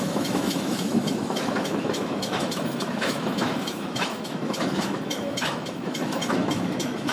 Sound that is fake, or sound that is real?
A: fake